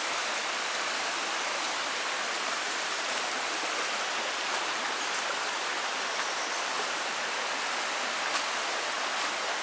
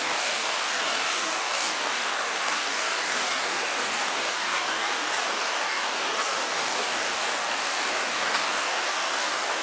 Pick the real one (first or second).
first